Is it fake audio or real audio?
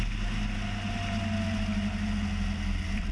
real